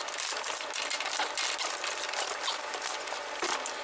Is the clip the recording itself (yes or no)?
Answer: yes